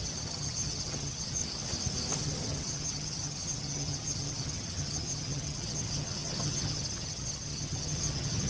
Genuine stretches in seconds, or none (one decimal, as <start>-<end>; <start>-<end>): 1.4-2.2

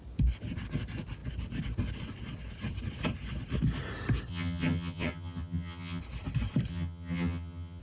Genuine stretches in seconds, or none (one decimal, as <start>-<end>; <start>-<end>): 0.0-4.3; 6.0-6.7

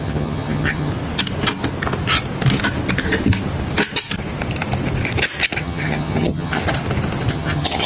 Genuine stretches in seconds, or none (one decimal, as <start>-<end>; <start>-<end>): 0.9-5.6; 6.6-7.3

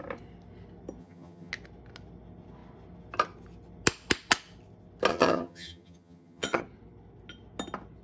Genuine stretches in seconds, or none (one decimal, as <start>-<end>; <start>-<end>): 0.0-1.0; 1.5-5.1; 6.6-8.0

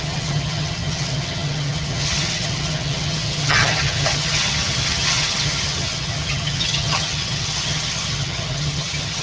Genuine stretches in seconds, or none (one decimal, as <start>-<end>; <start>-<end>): none

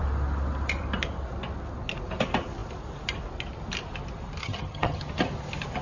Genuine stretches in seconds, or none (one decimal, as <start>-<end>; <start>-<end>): 0.0-4.4; 5.0-5.8

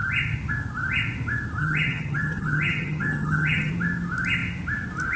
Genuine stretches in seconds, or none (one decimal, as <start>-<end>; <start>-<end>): 0.0-1.6; 3.7-5.2